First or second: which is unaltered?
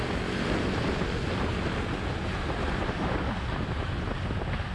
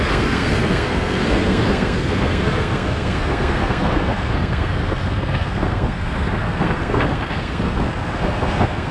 first